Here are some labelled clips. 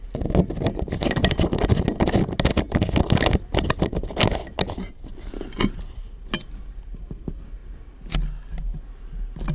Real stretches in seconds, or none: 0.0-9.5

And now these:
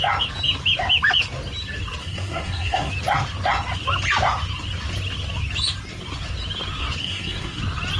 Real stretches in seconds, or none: 0.0-2.0; 2.9-7.0; 7.6-8.0

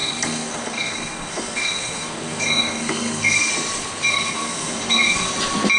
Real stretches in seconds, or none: 3.5-4.1; 5.3-5.8

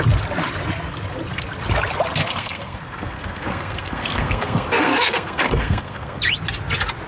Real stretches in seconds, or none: 0.0-2.2; 6.2-7.1

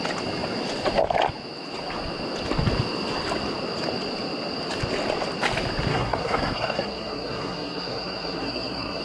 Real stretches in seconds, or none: 0.0-5.9

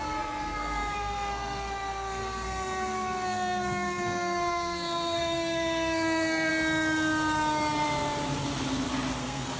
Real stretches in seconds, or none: 6.5-9.2

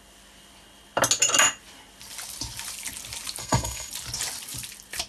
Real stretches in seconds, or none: 0.0-3.4; 3.9-5.1